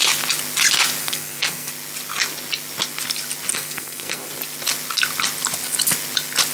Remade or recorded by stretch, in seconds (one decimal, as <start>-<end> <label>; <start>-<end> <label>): 0.0-1.0 recorded; 1.0-1.7 remade; 1.7-3.5 recorded; 3.5-4.3 remade; 4.3-6.5 recorded